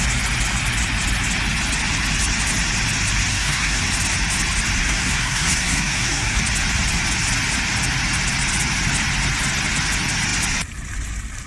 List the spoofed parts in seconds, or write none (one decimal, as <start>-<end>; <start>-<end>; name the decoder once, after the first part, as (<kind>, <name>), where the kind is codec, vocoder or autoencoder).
3.3-3.8 (codec, SNAC); 4.8-6.4